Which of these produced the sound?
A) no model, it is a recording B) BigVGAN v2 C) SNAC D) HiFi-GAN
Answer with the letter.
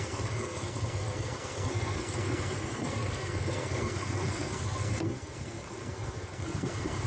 C